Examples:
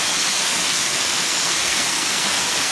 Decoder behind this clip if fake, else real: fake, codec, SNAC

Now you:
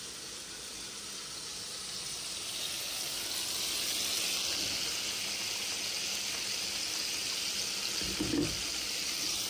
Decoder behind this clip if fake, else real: real